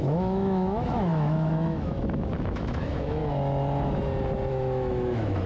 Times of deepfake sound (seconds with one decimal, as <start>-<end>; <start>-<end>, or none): 0.0-3.2; 4.5-5.5